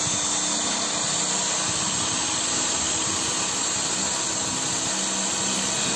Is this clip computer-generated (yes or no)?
no